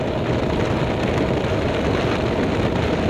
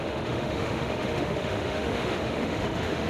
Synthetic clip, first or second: second